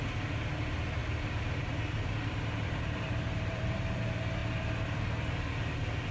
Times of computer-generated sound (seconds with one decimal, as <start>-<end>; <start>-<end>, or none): 1.0-4.0